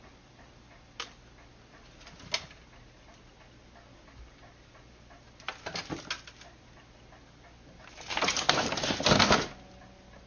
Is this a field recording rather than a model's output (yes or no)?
yes